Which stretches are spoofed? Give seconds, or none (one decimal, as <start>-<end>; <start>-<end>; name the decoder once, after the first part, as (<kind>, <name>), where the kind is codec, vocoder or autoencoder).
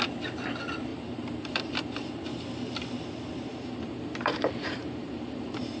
0.9-2.2 (vocoder, BigVGAN v2); 3.5-5.8